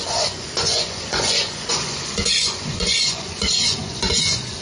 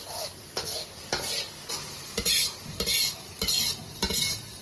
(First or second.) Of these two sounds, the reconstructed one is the first